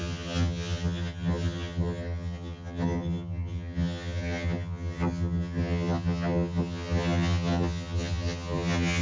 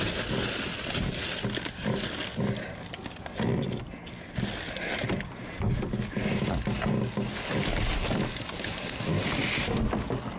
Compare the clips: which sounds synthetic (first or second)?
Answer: first